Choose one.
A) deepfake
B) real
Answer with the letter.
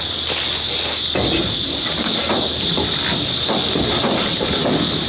B